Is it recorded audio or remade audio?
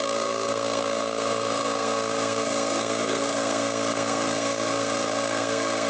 remade